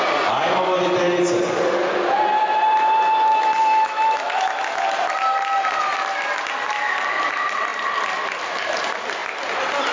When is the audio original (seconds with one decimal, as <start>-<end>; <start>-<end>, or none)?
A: 0.0-3.3; 4.6-9.9